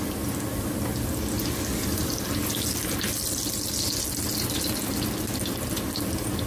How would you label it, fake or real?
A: real